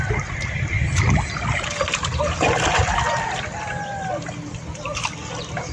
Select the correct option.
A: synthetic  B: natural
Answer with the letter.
B